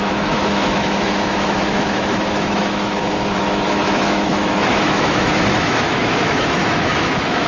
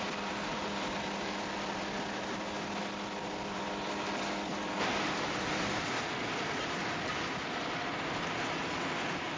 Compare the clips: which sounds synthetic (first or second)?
first